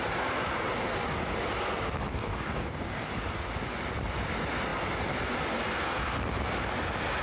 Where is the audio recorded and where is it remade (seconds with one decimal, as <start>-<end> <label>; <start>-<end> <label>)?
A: 0.0-2.1 recorded; 2.1-3.1 remade; 3.1-7.2 recorded